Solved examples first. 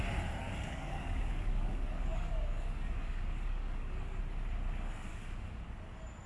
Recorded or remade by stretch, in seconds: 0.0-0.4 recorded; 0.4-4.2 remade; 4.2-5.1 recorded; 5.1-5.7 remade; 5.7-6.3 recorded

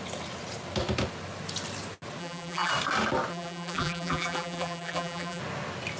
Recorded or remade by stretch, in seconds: 0.0-2.2 recorded; 2.2-2.7 remade; 2.7-3.3 recorded; 3.3-5.4 remade; 5.4-6.0 recorded

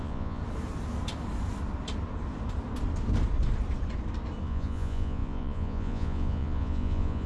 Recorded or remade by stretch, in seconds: 0.0-0.4 remade; 0.4-4.4 recorded; 4.4-7.3 remade